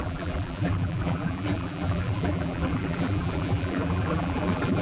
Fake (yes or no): yes